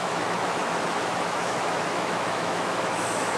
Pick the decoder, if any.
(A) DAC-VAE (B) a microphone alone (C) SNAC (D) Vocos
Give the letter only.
A